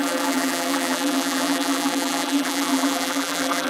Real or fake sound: fake